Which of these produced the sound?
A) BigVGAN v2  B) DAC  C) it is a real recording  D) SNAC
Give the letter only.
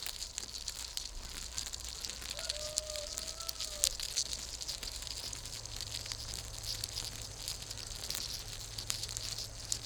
C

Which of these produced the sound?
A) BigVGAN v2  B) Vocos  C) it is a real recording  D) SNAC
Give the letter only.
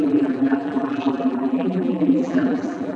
A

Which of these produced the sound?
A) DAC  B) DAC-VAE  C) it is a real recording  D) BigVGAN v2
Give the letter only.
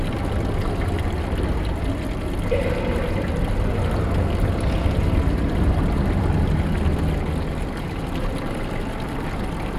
C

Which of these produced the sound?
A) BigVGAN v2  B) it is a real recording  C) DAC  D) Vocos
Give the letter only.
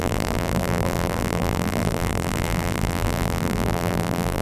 A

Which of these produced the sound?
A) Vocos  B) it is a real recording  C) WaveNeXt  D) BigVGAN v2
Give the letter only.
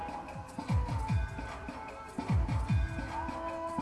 B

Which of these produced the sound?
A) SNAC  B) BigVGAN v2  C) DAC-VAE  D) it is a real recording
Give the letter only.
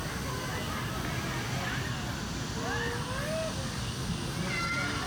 D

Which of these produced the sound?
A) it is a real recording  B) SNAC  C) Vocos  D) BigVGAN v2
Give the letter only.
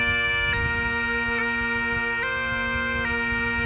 A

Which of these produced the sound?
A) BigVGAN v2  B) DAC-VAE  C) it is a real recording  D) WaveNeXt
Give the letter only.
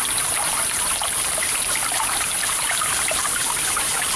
A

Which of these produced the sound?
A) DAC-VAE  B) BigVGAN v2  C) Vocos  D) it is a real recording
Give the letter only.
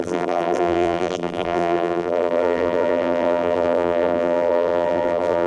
B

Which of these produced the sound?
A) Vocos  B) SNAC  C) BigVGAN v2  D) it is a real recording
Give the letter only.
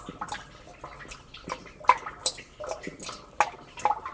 D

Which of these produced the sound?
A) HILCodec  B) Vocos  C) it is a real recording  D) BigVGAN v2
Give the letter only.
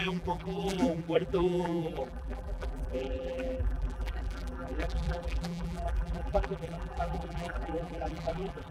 D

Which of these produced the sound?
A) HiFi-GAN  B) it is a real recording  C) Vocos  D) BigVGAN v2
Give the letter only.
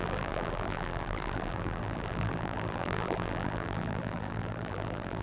D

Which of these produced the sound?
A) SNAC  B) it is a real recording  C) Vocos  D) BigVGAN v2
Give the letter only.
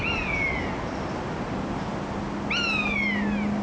B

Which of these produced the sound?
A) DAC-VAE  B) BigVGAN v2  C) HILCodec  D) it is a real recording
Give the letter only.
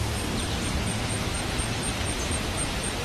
B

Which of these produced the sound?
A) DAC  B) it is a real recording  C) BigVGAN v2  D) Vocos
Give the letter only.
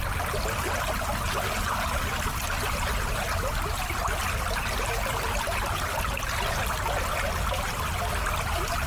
B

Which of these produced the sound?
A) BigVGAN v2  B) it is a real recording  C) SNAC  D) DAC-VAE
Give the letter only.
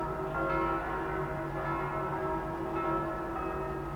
B